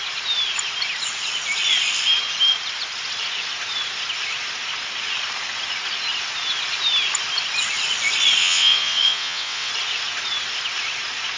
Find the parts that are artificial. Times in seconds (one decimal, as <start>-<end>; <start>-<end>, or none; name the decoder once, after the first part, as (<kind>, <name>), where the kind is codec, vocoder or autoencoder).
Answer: 8.4-9.7 (vocoder, WaveNeXt)

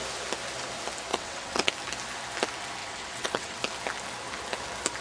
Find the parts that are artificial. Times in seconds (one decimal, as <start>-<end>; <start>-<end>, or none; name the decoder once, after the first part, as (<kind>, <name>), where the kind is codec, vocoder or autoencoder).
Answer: 1.1-1.7 (vocoder, WaveNeXt); 2.8-3.6

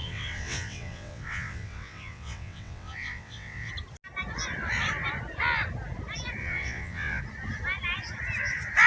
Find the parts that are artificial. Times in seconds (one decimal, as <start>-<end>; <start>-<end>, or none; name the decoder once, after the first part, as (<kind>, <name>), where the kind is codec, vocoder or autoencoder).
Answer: 0.0-3.7 (vocoder, WaveNeXt); 6.4-7.2

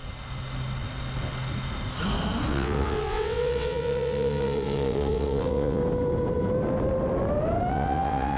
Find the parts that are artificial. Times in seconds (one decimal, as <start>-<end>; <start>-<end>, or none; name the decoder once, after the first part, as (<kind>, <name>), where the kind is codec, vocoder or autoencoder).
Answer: 2.5-5.8 (vocoder, WaveNeXt); 7.7-8.4

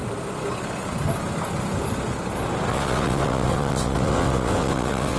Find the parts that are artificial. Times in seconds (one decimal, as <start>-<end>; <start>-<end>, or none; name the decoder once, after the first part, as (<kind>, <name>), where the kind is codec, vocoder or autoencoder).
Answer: 2.7-5.2 (vocoder, WaveNeXt)

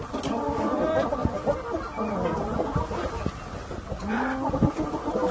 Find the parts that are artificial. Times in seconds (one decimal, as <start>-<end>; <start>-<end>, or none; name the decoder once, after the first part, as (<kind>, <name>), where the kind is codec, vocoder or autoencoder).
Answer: none

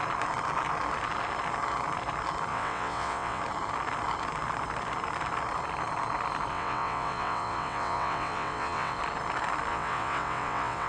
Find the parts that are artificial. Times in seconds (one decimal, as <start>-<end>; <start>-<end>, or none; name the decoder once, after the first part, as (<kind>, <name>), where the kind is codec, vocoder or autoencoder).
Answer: 2.5-3.4 (vocoder, WaveNeXt); 6.5-9.0; 9.7-10.9